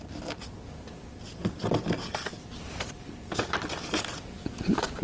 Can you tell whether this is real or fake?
real